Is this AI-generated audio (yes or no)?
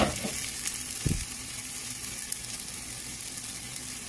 no